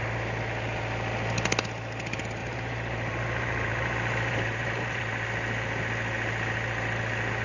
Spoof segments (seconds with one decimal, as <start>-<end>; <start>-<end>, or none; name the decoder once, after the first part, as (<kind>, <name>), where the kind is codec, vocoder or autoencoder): 2.4-5.0 (vocoder, BigVGAN v2)